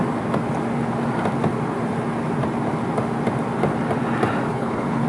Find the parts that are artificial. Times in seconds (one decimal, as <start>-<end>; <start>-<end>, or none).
4.5-5.1